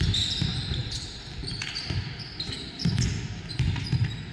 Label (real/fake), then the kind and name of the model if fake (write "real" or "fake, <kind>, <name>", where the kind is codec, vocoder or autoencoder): real